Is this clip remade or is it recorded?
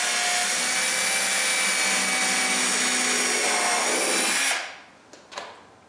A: recorded